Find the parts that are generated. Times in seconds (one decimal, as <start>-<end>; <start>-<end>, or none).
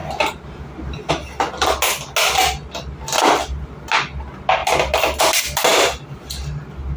0.0-1.1